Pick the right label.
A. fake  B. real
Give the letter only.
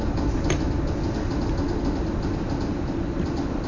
B